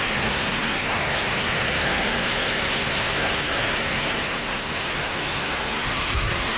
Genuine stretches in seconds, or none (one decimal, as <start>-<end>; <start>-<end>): none